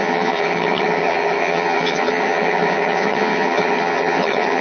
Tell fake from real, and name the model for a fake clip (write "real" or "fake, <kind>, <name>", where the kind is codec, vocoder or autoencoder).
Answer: fake, vocoder, HiFi-GAN